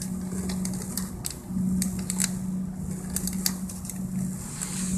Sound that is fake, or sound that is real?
real